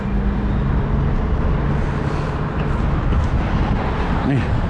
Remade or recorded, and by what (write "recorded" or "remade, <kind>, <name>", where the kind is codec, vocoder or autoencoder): recorded